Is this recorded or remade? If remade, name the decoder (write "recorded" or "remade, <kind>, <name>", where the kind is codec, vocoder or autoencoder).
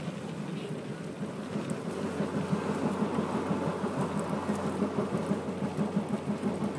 recorded